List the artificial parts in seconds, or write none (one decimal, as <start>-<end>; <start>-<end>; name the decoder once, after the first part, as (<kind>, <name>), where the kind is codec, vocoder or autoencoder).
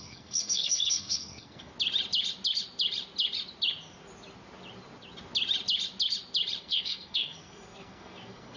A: 0.0-1.7 (codec, SNAC); 6.6-8.6